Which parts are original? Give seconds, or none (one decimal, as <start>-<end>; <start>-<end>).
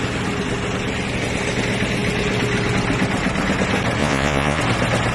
0.0-4.0; 4.6-5.1